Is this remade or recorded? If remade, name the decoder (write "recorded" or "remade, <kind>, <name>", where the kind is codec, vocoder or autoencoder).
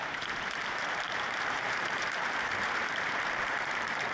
remade, vocoder, BigVGAN v2